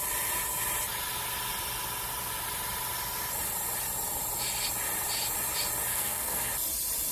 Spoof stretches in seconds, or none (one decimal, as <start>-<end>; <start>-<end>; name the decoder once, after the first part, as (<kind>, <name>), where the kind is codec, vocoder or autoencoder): 5.9-6.5 (codec, SNAC)